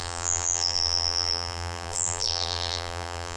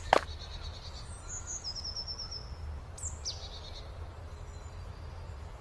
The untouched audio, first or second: second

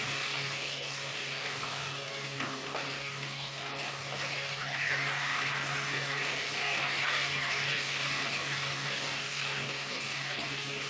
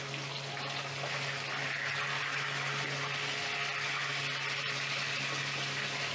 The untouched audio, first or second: second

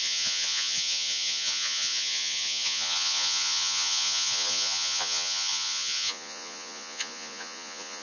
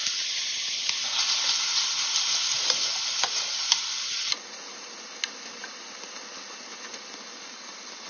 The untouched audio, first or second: second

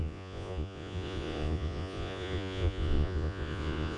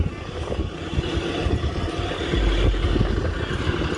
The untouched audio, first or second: second